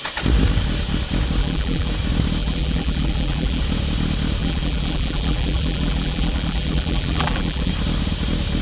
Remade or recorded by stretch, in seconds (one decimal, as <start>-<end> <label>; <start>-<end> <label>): 0.0-1.4 recorded; 1.4-1.9 remade; 1.9-2.4 recorded; 2.4-3.6 remade; 3.6-4.4 recorded; 4.4-7.7 remade; 7.7-8.6 recorded

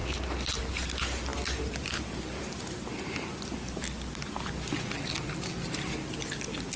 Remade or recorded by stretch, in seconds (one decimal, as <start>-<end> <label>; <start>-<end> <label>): 0.0-6.8 recorded

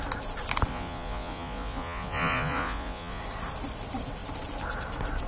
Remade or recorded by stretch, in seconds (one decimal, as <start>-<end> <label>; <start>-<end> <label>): 0.0-0.7 recorded; 0.7-3.2 remade; 3.2-5.3 recorded

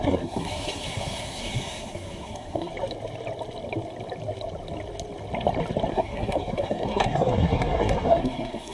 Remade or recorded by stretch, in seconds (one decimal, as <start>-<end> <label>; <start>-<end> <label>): 0.0-2.7 remade; 2.7-5.9 recorded; 5.9-8.7 remade

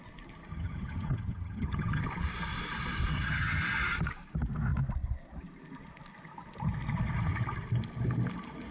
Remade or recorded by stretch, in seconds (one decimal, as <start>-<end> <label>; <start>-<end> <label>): 0.0-0.5 recorded; 0.5-2.0 remade; 2.0-3.1 recorded; 3.1-3.6 remade; 3.6-8.7 recorded